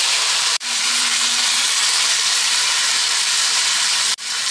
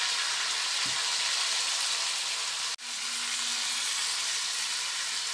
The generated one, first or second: first